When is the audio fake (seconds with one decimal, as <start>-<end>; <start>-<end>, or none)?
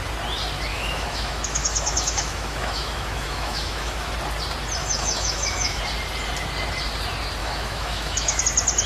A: 0.7-4.1; 4.8-5.8; 7.4-8.4